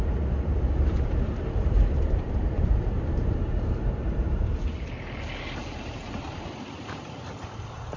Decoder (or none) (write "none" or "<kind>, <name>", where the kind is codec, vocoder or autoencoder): vocoder, BigVGAN v2